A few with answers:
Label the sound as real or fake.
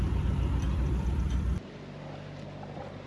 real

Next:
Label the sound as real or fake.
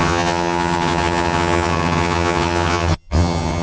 fake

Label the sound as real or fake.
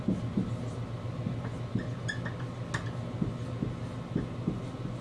real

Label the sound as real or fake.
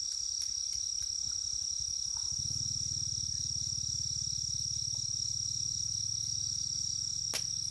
real